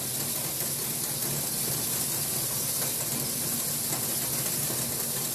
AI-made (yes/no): no